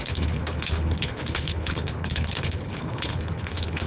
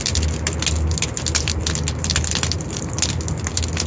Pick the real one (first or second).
second